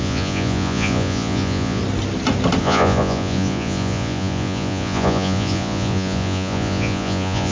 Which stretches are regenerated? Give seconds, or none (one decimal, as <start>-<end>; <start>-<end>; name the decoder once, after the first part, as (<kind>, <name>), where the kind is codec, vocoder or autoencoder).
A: 0.0-1.8 (vocoder, Vocos); 2.6-7.5